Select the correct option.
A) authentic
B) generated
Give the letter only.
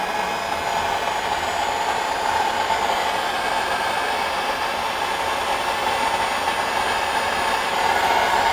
A